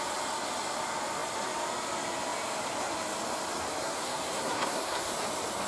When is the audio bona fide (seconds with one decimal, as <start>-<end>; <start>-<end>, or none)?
0.0-3.8; 5.1-5.7